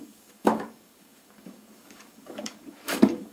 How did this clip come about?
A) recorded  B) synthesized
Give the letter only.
B